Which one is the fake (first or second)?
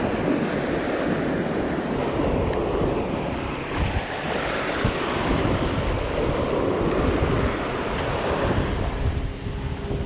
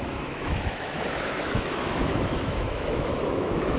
second